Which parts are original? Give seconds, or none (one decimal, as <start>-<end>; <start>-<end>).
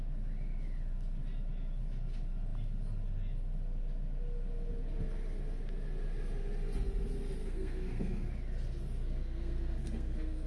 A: 0.0-7.4; 8.3-9.1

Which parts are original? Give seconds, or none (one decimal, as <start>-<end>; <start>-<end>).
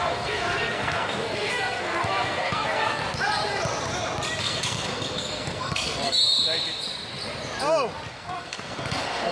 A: 3.0-4.4; 6.2-8.1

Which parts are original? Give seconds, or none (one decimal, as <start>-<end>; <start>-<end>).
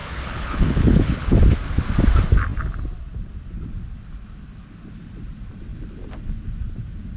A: 1.4-7.2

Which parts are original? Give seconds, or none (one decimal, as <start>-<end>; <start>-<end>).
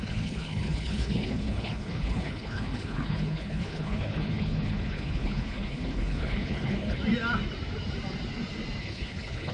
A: 7.0-8.8